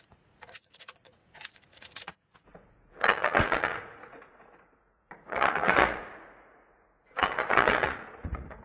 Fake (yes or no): yes